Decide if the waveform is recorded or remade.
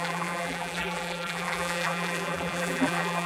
remade